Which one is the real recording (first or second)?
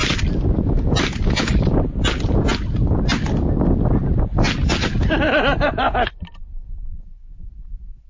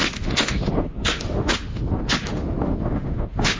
first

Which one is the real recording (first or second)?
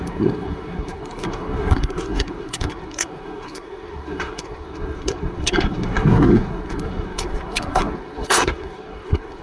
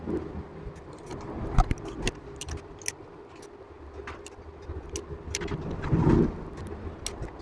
second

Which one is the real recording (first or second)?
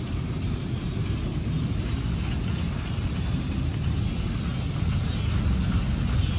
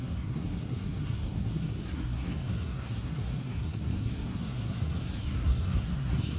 first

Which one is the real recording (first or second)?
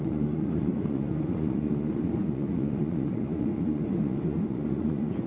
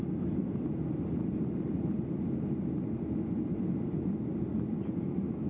second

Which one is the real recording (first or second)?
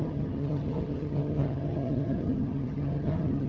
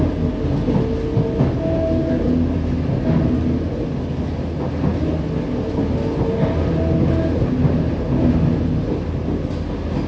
second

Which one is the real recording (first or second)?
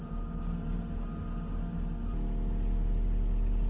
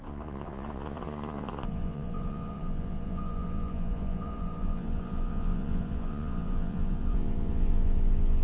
first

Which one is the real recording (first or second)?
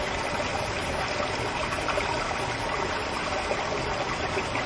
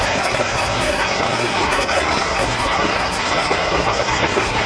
first